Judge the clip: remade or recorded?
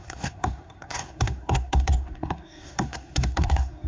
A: remade